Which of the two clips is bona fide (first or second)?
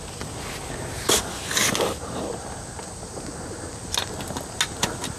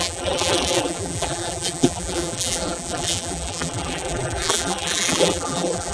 first